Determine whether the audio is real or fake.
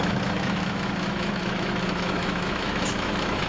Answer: fake